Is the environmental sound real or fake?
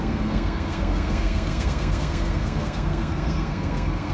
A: fake